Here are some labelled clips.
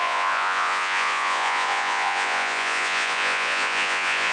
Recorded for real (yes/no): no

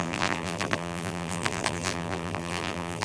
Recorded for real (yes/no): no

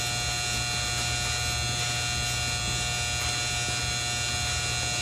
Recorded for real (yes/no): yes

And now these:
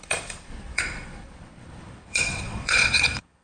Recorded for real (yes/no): no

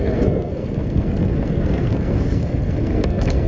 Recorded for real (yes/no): no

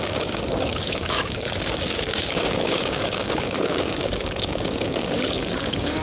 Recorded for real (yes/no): no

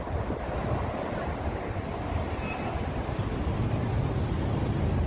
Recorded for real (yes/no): yes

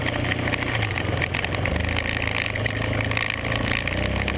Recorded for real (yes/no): yes